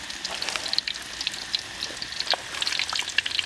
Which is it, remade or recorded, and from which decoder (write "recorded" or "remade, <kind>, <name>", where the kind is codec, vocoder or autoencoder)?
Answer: recorded